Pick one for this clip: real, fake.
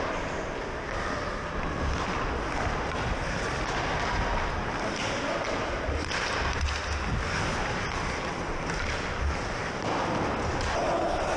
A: real